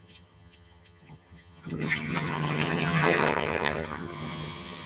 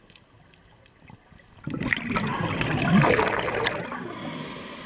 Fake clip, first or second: first